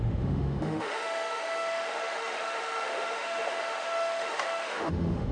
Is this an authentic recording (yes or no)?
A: no